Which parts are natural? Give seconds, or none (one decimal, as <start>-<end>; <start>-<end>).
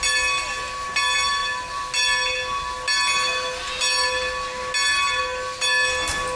0.0-6.4